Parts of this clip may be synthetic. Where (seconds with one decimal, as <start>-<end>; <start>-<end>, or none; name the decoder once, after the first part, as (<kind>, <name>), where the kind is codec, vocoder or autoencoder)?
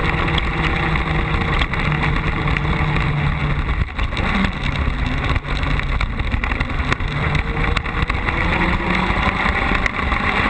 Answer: none